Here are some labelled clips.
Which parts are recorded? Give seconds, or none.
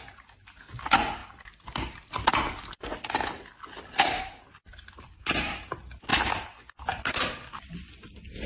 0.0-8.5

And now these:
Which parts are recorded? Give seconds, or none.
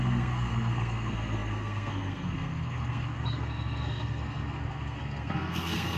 none